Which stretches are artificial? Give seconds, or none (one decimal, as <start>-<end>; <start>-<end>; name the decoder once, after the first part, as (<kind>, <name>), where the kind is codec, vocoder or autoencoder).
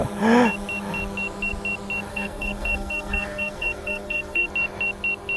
2.1-4.5 (codec, SNAC)